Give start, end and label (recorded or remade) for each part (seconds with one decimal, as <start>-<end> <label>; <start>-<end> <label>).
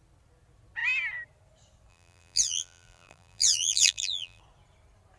0.0-1.9 recorded; 1.9-4.4 remade; 4.4-5.2 recorded